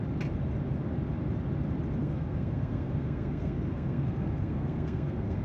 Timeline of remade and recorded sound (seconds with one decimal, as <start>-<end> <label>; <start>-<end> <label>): 0.0-2.0 recorded; 2.0-5.4 remade